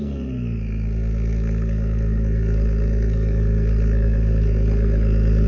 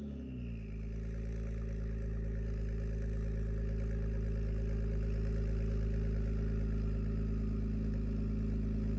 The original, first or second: second